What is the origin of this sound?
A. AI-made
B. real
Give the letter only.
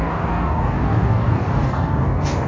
A